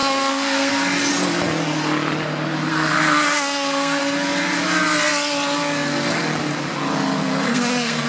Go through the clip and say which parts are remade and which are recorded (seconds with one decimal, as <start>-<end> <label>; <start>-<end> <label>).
0.0-0.7 remade; 0.7-2.7 recorded; 2.7-4.0 remade; 4.0-7.2 recorded; 7.2-8.1 remade